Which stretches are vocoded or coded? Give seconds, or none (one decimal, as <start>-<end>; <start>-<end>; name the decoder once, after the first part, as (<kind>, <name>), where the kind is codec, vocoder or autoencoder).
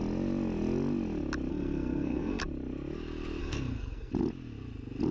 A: 1.5-2.4 (codec, SNAC); 3.4-4.1